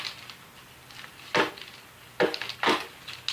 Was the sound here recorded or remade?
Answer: recorded